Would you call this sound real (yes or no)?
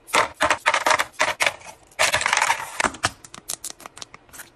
yes